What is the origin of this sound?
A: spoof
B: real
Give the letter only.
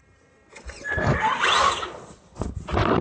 B